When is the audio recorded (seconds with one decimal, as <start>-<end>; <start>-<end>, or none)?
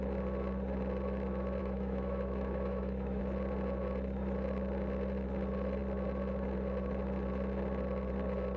0.0-1.6; 3.2-8.6